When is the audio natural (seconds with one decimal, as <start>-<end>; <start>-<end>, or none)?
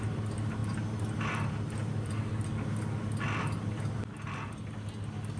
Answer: 0.0-5.4